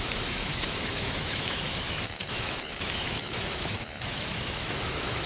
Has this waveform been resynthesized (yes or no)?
yes